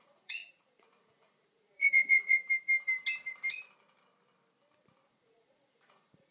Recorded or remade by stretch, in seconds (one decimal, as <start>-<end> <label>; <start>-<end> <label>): 0.0-2.4 remade; 2.4-5.1 recorded; 5.1-6.3 remade